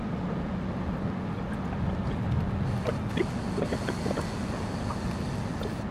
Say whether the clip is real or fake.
real